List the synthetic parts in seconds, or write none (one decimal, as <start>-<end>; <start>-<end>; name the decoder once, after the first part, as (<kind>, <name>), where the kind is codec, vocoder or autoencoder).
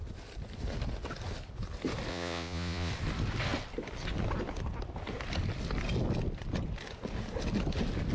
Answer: 2.1-2.9 (vocoder, Vocos)